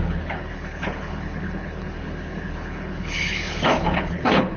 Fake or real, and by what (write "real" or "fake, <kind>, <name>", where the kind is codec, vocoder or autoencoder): fake, codec, HILCodec